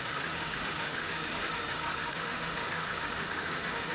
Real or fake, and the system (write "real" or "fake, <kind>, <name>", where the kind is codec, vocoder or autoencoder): fake, autoencoder, DAC-VAE